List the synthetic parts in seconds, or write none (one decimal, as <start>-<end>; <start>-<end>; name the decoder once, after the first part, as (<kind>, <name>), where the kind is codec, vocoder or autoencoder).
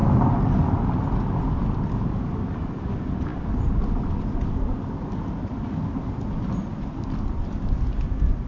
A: none